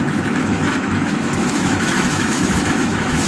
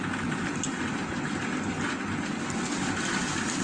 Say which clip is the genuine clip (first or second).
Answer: second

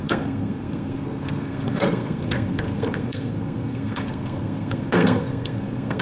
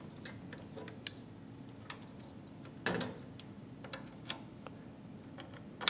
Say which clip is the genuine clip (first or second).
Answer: second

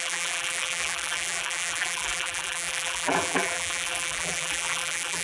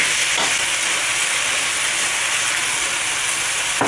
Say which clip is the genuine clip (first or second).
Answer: second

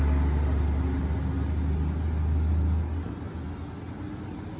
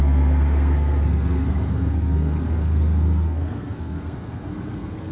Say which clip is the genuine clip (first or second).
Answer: first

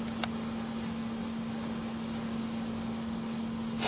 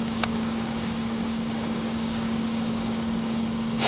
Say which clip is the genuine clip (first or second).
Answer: first